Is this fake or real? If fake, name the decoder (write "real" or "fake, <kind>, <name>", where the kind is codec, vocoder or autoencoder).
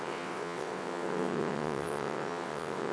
fake, vocoder, WaveNeXt